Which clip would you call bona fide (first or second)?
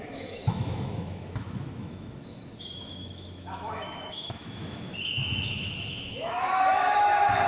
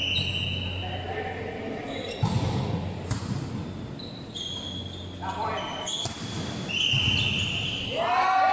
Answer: second